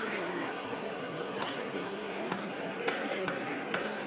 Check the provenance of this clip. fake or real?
fake